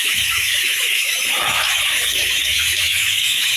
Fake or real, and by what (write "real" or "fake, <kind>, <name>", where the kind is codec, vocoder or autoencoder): fake, autoencoder, DAC-VAE